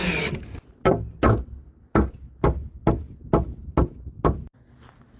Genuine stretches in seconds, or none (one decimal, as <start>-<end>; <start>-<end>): 0.0-5.2